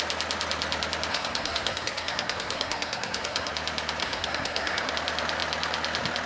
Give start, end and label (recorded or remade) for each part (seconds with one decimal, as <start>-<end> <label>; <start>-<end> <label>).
0.0-1.1 recorded; 1.1-3.5 remade; 3.5-4.0 recorded; 4.0-4.9 remade; 4.9-6.3 recorded